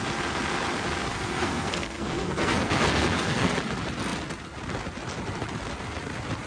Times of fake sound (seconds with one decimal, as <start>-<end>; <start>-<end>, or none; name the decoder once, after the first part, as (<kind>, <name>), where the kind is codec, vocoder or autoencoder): 1.1-3.5 (codec, SNAC)